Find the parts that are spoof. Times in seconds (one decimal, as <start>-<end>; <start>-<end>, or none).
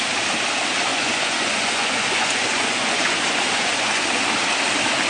0.9-4.0